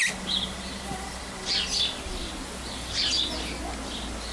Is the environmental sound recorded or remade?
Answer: recorded